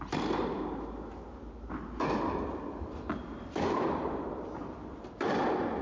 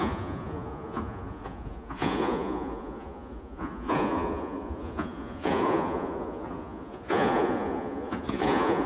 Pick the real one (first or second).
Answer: first